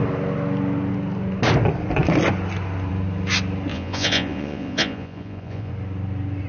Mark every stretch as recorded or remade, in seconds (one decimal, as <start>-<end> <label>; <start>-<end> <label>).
0.0-3.7 recorded; 3.7-5.7 remade; 5.7-6.5 recorded